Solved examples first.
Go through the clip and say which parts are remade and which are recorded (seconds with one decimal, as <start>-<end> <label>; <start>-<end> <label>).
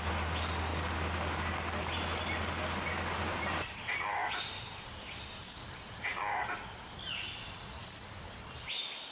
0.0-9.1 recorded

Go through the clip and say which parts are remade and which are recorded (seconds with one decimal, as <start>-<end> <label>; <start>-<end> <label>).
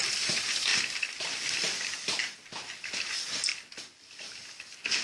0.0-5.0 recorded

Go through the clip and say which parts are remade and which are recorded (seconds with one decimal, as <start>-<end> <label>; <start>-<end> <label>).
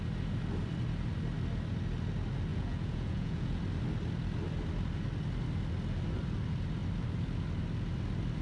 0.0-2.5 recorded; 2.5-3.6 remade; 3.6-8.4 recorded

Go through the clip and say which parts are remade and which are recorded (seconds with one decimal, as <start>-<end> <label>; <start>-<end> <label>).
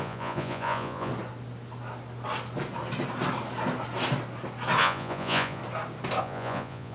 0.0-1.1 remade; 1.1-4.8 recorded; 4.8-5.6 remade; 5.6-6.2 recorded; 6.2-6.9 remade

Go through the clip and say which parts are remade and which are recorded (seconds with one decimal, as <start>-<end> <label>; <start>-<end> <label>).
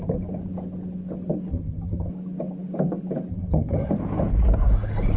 0.0-1.5 recorded; 1.5-2.1 remade; 2.1-3.3 recorded; 3.3-3.9 remade; 3.9-5.2 recorded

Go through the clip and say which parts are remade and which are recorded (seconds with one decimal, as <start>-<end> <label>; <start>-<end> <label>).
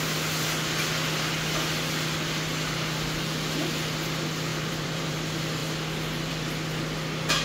0.0-4.5 recorded; 4.5-5.1 remade; 5.1-7.4 recorded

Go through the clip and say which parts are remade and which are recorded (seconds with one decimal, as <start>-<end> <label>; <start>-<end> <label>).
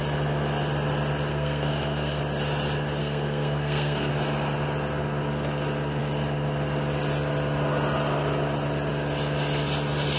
0.0-1.3 recorded; 1.3-2.2 remade; 2.2-3.0 recorded; 3.0-4.1 remade; 4.1-10.2 recorded